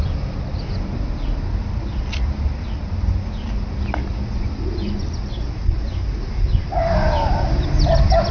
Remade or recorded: recorded